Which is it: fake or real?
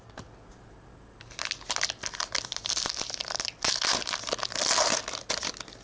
real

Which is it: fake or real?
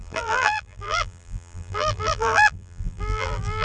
fake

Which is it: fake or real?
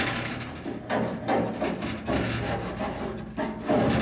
real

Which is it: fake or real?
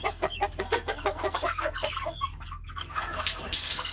fake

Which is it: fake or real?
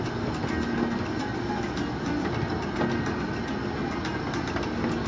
real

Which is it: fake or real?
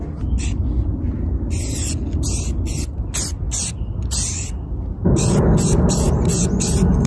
real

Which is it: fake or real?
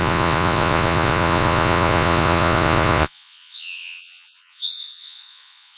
fake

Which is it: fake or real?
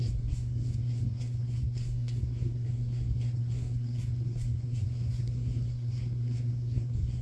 fake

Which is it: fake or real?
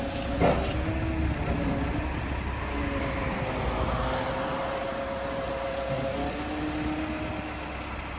real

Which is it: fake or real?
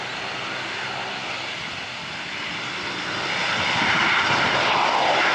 real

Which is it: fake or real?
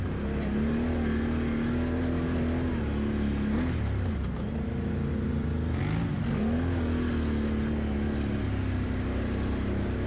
real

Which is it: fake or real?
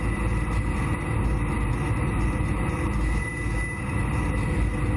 real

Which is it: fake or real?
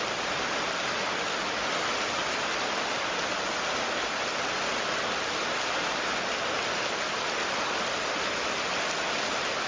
real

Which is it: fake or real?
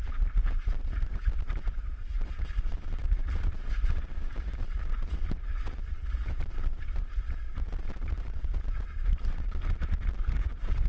fake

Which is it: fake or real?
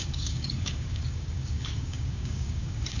fake